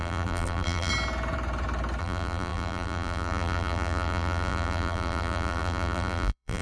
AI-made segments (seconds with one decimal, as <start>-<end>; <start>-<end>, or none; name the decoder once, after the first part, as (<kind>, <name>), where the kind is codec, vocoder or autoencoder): 0.0-0.9 (vocoder, BigVGAN v2); 2.0-6.6